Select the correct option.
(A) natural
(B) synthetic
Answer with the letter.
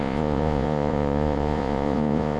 B